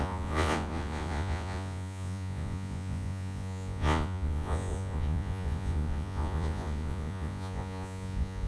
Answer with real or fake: fake